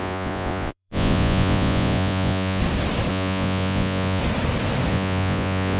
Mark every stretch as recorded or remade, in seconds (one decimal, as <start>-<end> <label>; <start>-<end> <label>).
0.0-2.6 remade; 2.6-3.1 recorded; 3.1-4.2 remade; 4.2-4.9 recorded; 4.9-5.8 remade